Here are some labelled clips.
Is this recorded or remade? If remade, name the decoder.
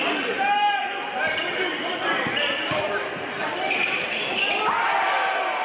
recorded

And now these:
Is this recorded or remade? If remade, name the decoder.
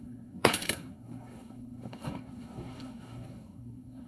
remade, codec, SNAC